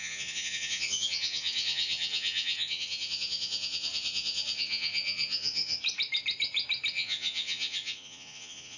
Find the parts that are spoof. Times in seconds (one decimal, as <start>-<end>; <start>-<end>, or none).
0.0-5.8; 6.9-8.8